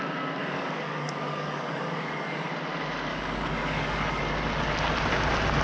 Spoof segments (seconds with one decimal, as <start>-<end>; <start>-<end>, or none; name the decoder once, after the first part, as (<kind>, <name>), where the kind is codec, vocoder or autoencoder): 0.4-2.5 (codec, DAC); 3.1-4.2